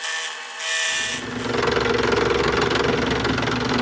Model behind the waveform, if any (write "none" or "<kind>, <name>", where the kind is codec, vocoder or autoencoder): none